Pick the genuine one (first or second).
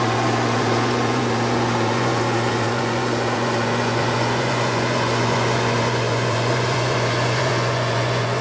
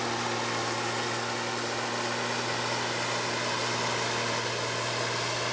second